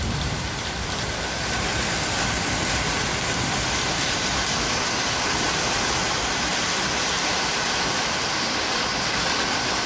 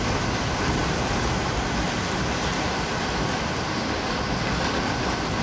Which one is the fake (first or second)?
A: first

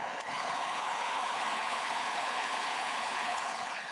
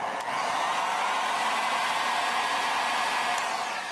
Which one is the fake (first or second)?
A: first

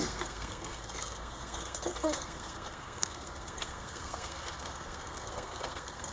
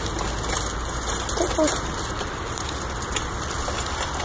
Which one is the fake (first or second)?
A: first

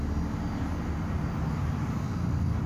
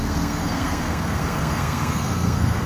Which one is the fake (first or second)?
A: second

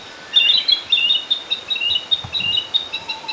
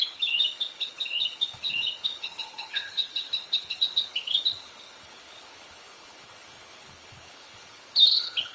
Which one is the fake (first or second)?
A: second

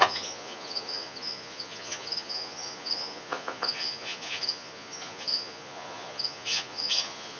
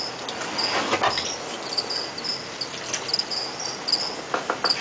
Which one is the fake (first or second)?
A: first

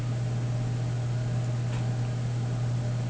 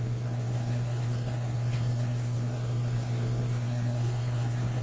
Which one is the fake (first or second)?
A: second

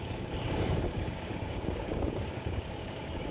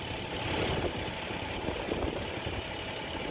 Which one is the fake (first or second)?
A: first